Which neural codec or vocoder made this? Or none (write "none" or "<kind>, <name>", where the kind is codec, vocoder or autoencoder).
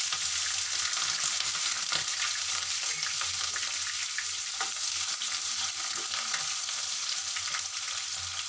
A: none